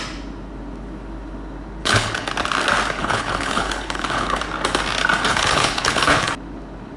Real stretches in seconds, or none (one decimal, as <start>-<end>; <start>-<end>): 0.0-1.8; 2.3-3.0; 4.4-5.3; 6.3-7.0